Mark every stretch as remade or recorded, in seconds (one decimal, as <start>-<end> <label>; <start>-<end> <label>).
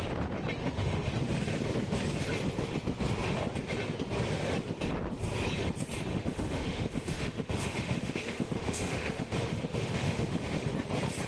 0.0-0.6 recorded; 0.6-1.1 remade; 1.1-6.1 recorded; 6.1-10.7 remade; 10.7-11.3 recorded